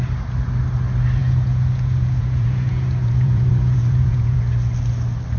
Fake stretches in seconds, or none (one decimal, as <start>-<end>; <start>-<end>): 1.2-4.4